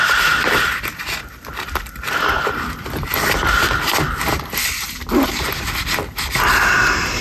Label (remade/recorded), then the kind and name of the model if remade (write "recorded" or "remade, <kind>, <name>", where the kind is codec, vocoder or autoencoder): recorded